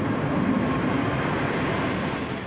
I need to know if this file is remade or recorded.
recorded